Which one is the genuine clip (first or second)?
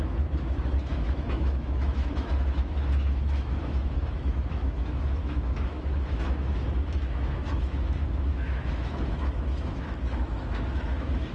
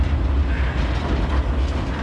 second